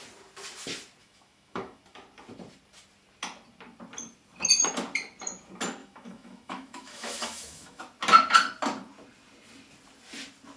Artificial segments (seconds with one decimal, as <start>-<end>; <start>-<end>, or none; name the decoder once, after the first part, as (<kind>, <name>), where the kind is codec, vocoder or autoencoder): 1.0-1.8 (autoencoder, DAC-VAE); 5.8-7.8